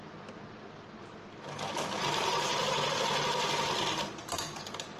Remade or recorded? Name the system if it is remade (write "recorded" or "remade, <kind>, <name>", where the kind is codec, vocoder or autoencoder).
recorded